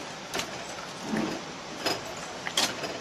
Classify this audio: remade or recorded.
recorded